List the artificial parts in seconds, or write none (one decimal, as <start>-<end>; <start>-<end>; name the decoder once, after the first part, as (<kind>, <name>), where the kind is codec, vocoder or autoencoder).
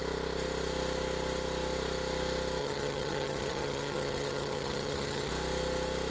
2.6-5.3 (vocoder, HiFi-GAN)